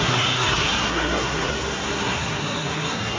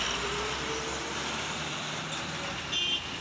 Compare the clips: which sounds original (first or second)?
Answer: second